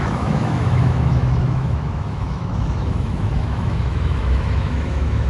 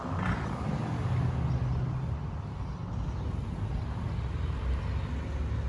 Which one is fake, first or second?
first